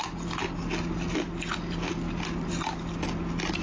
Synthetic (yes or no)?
no